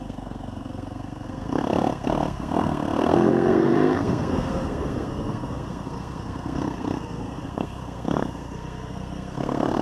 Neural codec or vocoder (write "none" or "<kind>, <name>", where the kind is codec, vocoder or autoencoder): codec, SNAC